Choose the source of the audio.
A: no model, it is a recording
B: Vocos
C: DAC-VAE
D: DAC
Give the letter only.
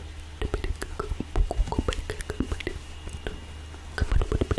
A